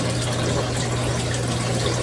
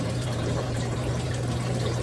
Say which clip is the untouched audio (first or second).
first